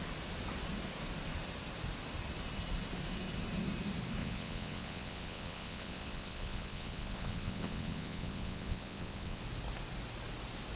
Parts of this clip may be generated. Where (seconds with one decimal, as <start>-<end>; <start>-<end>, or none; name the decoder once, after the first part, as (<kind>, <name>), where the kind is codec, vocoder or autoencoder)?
4.2-9.4 (vocoder, WaveNeXt)